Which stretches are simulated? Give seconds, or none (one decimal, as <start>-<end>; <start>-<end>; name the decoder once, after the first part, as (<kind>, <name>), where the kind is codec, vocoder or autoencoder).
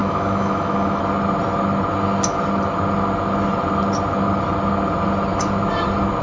0.0-1.0 (autoencoder, DAC-VAE)